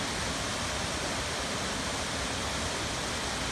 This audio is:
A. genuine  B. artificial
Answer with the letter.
A